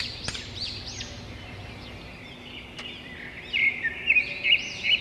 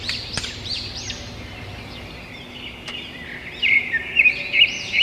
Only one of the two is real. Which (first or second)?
first